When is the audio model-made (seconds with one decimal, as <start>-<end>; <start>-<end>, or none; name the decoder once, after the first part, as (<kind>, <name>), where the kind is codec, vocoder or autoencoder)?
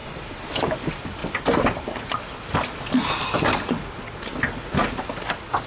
none